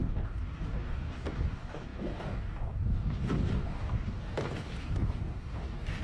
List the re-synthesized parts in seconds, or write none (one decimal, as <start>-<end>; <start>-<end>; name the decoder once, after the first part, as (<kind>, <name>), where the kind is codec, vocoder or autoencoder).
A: 0.0-6.0 (codec, DAC)